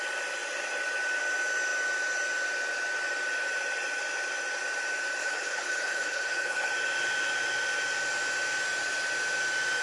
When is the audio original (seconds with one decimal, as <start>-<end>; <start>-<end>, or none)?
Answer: 0.0-5.2; 6.7-9.8